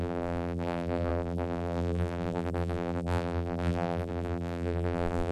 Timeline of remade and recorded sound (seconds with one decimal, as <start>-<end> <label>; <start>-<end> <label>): 0.0-5.3 remade